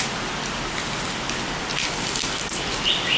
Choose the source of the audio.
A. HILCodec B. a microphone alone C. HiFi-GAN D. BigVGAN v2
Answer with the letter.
B